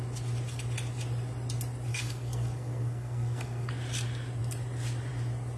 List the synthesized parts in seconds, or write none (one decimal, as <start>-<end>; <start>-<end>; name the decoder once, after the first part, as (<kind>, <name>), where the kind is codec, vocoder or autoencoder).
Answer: 1.9-3.7 (codec, SNAC)